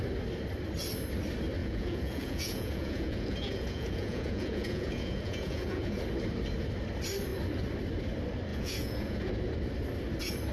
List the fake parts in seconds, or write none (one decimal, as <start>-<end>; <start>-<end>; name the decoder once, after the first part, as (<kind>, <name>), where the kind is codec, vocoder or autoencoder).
1.6-6.0 (vocoder, Vocos); 8.5-9.3